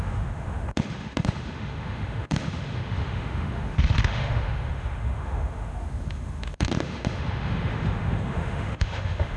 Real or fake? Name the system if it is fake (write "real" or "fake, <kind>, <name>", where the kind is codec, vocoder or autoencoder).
fake, autoencoder, DAC-VAE